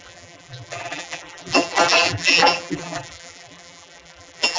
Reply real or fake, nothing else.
fake